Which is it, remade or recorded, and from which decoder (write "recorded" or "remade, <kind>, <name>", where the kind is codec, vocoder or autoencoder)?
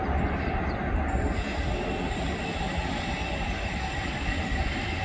recorded